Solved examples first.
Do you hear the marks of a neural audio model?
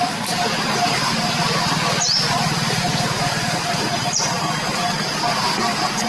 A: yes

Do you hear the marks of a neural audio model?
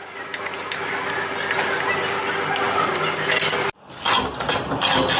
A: no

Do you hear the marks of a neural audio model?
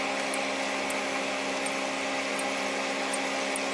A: no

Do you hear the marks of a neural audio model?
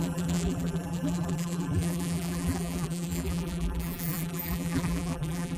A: yes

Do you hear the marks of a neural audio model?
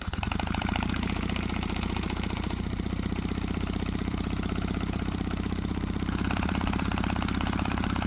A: yes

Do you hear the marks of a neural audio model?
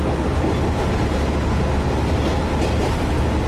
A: no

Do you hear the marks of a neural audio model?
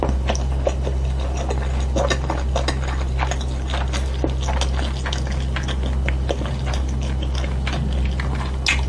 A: no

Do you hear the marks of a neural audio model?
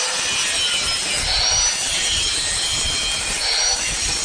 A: no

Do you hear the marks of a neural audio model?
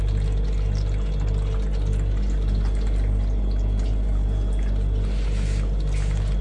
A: no